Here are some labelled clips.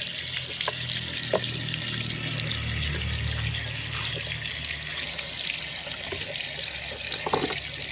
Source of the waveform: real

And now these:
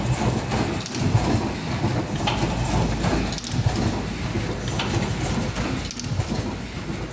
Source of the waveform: real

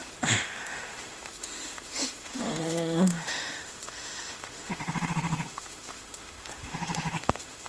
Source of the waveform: fake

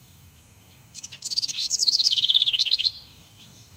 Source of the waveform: fake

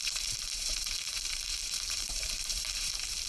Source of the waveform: fake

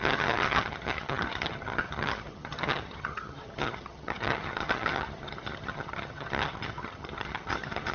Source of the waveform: fake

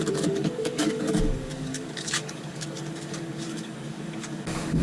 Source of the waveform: fake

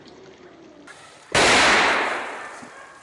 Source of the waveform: real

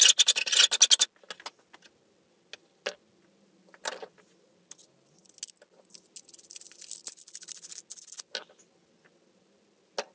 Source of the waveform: real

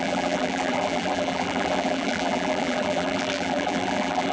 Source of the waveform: fake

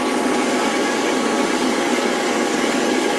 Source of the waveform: fake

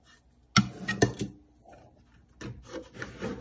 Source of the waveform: real